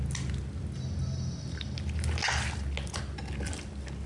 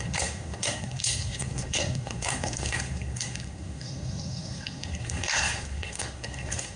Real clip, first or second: first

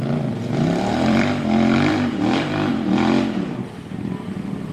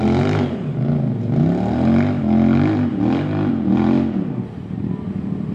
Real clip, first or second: second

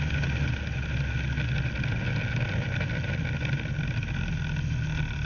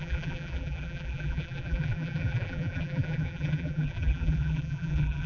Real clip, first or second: first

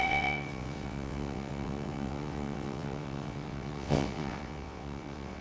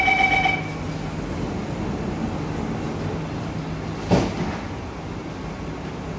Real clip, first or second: second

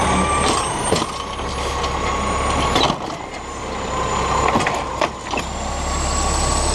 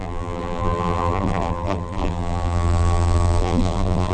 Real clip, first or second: first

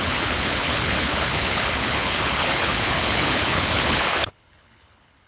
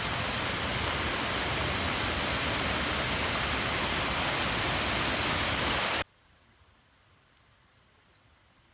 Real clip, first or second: second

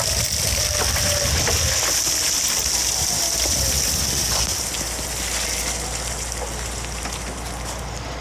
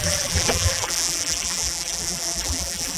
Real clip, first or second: first